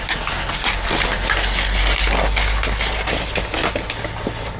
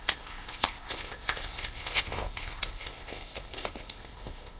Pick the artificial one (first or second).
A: second